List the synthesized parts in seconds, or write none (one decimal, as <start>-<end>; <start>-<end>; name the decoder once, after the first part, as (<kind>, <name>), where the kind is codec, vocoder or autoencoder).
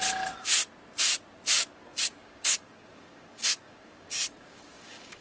1.9-5.2 (codec, DAC)